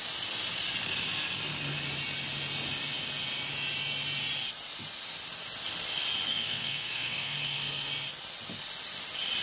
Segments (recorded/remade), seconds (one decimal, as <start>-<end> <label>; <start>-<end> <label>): 0.0-6.3 recorded; 6.3-7.9 remade; 7.9-9.4 recorded